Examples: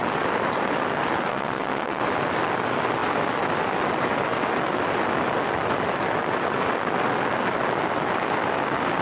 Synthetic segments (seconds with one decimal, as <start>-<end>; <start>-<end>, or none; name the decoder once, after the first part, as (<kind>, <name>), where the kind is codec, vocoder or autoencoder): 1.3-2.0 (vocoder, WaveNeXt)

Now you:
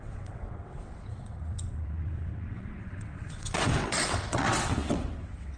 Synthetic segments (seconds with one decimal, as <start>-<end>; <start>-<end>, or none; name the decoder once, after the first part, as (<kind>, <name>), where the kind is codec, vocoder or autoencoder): 0.0-5.6 (vocoder, WaveNeXt)

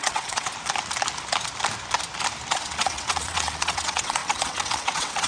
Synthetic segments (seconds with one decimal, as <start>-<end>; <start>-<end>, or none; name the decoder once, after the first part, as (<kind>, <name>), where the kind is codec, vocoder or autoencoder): 0.0-0.5 (vocoder, WaveNeXt); 2.5-5.3

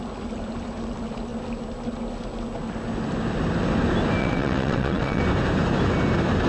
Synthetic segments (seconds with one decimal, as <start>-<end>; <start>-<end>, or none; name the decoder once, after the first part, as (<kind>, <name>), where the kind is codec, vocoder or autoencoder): 4.2-5.2 (vocoder, WaveNeXt)

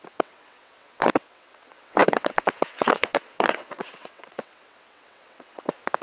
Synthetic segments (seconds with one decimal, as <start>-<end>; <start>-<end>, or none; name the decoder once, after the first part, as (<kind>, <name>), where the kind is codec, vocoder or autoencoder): 0.0-6.0 (vocoder, WaveNeXt)